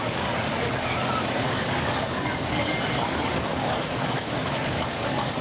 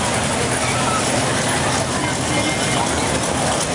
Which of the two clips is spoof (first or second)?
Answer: first